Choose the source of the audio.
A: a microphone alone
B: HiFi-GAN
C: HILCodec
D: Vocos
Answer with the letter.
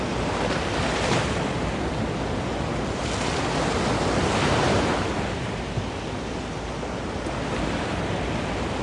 A